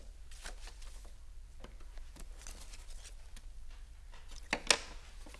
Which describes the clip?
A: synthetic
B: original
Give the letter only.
B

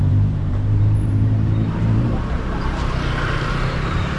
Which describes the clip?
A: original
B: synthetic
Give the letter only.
B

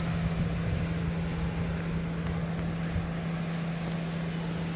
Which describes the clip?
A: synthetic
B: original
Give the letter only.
B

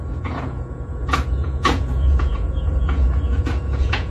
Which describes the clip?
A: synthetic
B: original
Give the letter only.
A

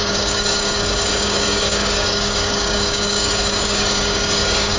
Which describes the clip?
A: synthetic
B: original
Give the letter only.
A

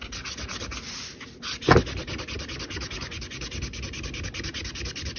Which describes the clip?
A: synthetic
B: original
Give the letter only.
B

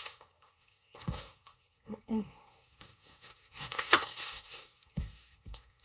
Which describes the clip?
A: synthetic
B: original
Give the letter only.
A